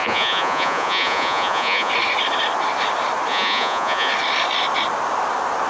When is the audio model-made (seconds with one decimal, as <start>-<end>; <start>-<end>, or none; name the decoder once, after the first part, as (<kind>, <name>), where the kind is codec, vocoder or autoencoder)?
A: 0.0-1.9 (vocoder, Vocos); 3.3-4.1